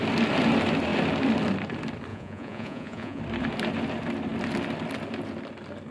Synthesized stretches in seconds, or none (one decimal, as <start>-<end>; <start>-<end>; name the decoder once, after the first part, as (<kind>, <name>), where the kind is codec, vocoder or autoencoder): 2.1-3.2 (vocoder, Vocos)

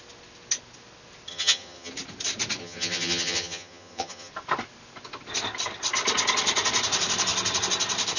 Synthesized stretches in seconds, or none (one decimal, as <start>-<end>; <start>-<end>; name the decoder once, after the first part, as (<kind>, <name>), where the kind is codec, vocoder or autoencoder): 1.3-1.9 (vocoder, HiFi-GAN); 2.6-4.3

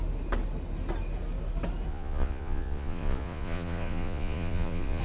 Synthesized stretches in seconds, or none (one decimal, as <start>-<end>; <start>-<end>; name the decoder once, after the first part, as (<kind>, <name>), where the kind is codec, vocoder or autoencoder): 1.9-5.0 (vocoder, Vocos)